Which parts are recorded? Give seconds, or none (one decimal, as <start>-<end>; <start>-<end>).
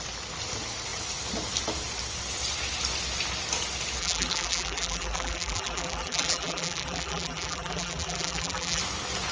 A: 0.0-4.0; 8.8-9.3